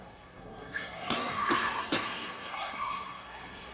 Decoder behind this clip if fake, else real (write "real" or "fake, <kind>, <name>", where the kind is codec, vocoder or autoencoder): fake, codec, SNAC